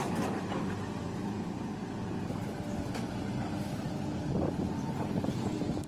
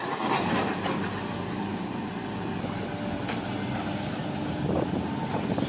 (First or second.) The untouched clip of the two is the second